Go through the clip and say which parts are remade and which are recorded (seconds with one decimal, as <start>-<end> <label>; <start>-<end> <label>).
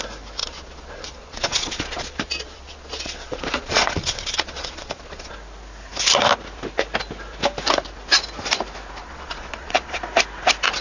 0.0-0.4 recorded; 0.4-5.3 remade; 5.3-9.0 recorded; 9.0-10.0 remade; 10.0-10.8 recorded